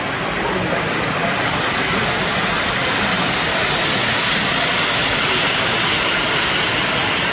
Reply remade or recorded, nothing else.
recorded